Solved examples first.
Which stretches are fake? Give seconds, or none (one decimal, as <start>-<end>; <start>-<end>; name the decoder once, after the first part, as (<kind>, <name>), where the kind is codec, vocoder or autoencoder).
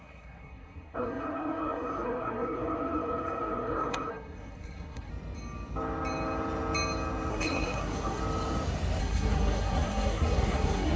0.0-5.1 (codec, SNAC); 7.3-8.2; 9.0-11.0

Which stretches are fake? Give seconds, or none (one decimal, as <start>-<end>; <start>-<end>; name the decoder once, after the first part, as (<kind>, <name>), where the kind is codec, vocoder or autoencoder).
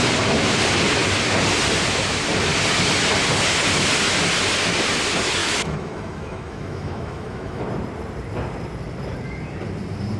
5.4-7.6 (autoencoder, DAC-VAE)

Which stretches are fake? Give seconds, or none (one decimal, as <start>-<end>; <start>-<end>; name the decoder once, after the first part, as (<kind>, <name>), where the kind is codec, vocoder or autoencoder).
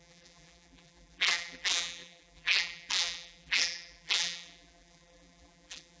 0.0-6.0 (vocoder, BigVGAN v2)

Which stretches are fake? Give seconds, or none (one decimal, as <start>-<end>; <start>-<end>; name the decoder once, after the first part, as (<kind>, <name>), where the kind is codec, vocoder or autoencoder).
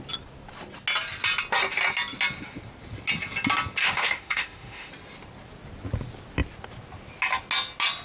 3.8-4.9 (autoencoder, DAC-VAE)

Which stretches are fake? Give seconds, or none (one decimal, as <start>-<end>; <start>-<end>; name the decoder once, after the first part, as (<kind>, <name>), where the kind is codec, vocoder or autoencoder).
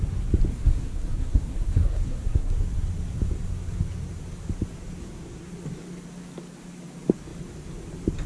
0.5-2.5 (codec, SNAC); 5.0-5.5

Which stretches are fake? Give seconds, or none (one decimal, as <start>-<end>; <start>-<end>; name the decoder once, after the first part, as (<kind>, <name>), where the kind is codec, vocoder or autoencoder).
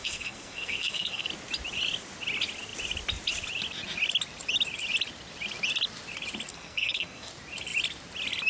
0.0-1.3 (codec, SNAC); 6.5-7.3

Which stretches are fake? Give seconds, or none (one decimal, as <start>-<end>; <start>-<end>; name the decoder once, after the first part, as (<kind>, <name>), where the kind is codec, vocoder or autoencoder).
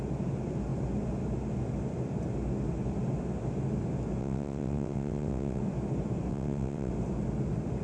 4.2-5.6 (vocoder, WaveNeXt); 6.3-6.9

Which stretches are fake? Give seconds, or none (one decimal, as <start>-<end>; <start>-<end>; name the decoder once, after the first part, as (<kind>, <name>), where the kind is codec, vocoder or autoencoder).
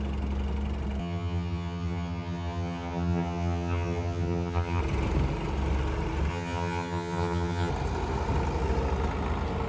1.0-4.8 (vocoder, HiFi-GAN); 6.3-7.7